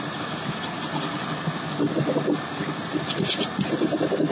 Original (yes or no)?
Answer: yes